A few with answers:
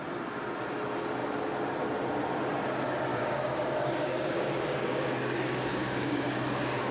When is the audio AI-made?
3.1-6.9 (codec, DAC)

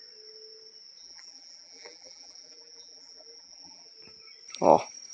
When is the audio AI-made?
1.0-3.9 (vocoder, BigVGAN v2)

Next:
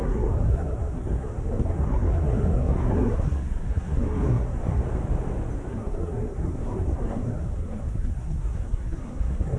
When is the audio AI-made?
0.0-4.8 (codec, SNAC); 5.7-9.6

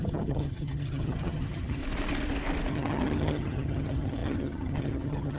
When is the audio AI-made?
0.0-1.8 (vocoder, HiFi-GAN); 2.7-5.4

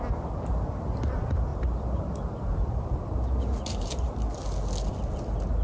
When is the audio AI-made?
none